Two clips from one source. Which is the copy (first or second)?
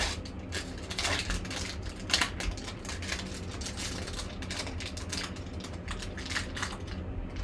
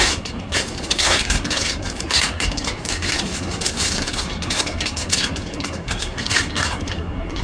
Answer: second